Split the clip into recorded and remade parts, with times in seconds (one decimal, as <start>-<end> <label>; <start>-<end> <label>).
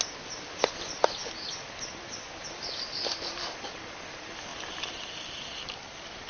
0.0-6.3 recorded